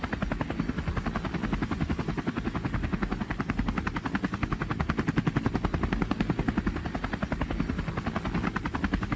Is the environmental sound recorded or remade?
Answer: recorded